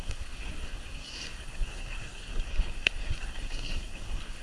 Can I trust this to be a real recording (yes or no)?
no